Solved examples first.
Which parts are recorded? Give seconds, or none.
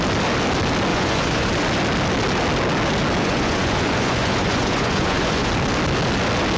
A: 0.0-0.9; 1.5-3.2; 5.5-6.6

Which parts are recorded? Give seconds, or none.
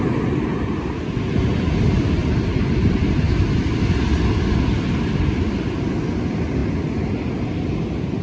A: 0.0-8.2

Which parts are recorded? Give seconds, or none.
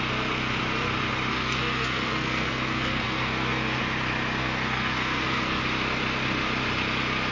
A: 0.0-1.3; 3.8-4.4; 5.6-7.3